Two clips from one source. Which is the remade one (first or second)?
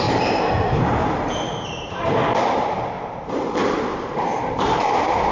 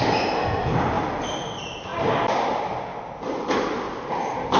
first